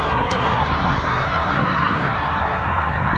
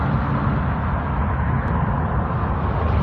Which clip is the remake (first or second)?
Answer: first